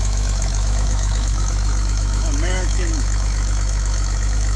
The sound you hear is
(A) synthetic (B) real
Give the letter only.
A